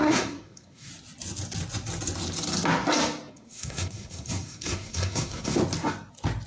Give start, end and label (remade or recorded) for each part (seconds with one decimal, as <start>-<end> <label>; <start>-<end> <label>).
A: 0.0-0.9 remade; 0.9-3.3 recorded; 3.3-5.6 remade; 5.6-6.5 recorded

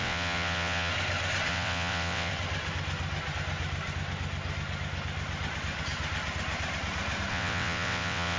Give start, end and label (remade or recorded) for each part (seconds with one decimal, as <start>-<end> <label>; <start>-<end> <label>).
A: 0.0-0.9 remade; 0.9-1.5 recorded; 1.5-2.3 remade; 2.3-7.3 recorded; 7.3-8.4 remade

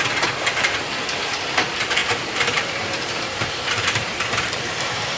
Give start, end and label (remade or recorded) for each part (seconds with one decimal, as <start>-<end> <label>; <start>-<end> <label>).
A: 0.0-2.0 recorded; 2.0-5.2 remade

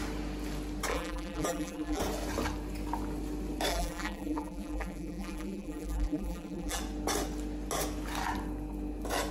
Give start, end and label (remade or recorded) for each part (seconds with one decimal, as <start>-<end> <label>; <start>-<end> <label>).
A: 0.0-0.9 recorded; 0.9-2.0 remade; 2.0-3.7 recorded; 3.7-6.8 remade; 6.8-9.3 recorded

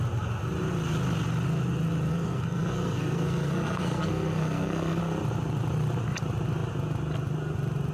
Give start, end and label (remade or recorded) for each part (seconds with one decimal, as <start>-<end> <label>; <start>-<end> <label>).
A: 0.0-2.1 recorded; 2.1-5.0 remade; 5.0-7.9 recorded

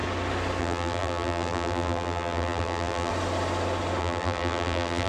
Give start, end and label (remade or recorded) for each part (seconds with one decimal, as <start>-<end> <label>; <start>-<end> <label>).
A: 0.0-0.6 recorded; 0.6-3.1 remade; 3.1-4.0 recorded; 4.0-5.1 remade

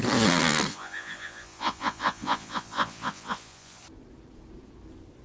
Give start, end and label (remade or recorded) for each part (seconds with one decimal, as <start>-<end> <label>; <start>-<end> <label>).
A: 0.0-0.7 recorded; 0.7-3.8 remade; 3.8-5.2 recorded

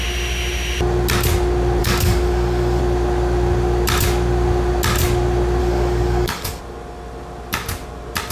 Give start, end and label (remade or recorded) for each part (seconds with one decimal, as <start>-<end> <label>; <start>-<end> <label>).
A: 0.0-1.8 recorded; 1.8-2.8 remade; 2.8-5.6 recorded; 5.6-6.6 remade; 6.6-8.3 recorded